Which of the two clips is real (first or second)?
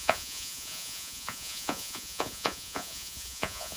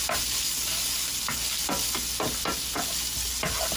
second